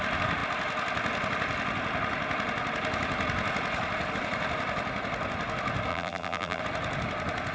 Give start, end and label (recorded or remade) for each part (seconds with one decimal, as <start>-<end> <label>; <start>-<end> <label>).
0.0-5.9 recorded; 5.9-6.6 remade; 6.6-7.5 recorded